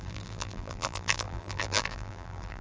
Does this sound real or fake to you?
fake